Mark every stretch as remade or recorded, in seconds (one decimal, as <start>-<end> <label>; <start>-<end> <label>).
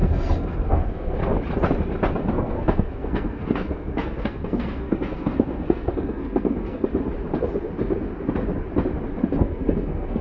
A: 0.0-1.3 remade; 1.3-2.3 recorded; 2.3-6.9 remade; 6.9-9.4 recorded; 9.4-10.2 remade